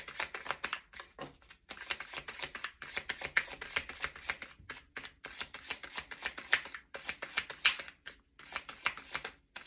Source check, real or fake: real